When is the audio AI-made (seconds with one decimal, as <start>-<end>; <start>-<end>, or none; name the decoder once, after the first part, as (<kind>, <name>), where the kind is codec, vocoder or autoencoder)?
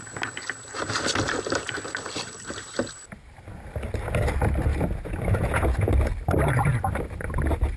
4.7-5.9 (vocoder, Vocos)